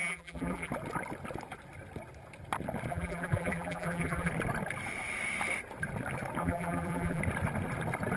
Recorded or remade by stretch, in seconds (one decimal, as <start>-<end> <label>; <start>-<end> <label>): 0.0-0.7 remade; 0.7-2.9 recorded; 2.9-4.3 remade; 4.3-6.4 recorded; 6.4-7.2 remade; 7.2-8.2 recorded